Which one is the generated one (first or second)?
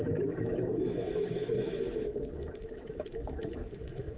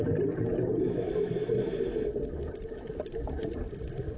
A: first